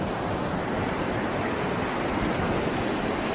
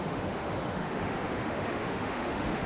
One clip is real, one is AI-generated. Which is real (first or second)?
first